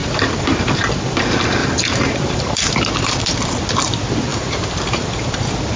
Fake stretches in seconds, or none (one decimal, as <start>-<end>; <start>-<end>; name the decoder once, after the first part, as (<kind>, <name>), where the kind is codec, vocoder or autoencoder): 0.0-0.9 (vocoder, BigVGAN v2); 1.6-3.3; 4.3-5.8